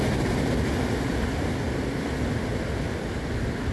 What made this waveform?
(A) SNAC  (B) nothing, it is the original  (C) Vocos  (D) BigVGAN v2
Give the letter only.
B